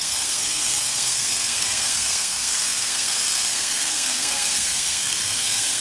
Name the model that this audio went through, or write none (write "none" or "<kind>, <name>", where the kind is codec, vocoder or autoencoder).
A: codec, SNAC